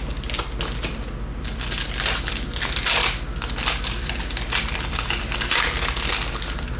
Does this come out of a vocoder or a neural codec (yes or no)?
no